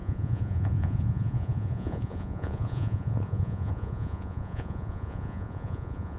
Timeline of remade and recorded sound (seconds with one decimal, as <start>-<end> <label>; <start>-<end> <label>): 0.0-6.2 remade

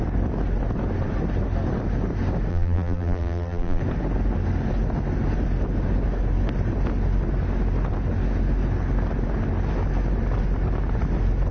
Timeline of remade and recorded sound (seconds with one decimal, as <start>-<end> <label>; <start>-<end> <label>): 0.0-2.5 recorded; 2.5-3.8 remade; 3.8-11.5 recorded

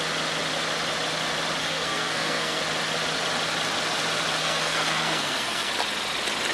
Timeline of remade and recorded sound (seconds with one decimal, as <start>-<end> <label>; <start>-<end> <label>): 0.0-1.6 recorded; 1.6-2.6 remade; 2.6-4.4 recorded; 4.4-5.7 remade; 5.7-6.5 recorded

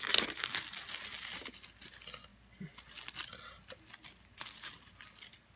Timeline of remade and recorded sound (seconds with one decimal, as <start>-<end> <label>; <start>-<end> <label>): 0.0-5.6 recorded